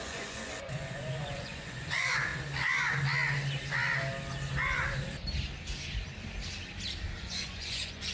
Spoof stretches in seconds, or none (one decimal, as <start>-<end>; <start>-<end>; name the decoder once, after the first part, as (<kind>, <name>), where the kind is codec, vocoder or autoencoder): 0.0-2.3 (vocoder, Vocos); 7.2-8.1